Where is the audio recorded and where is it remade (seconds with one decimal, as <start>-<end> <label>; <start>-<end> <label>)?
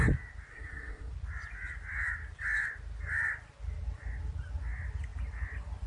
0.0-0.5 recorded; 0.5-1.1 remade; 1.1-5.9 recorded